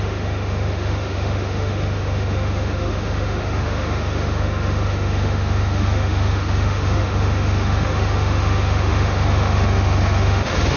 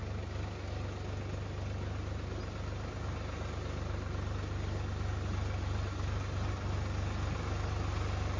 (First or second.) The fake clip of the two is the first